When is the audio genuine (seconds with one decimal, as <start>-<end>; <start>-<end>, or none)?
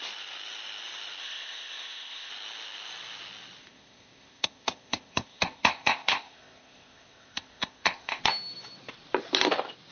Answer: 0.0-1.2; 2.3-3.6; 8.2-9.9